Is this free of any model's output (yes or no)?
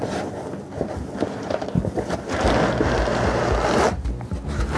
yes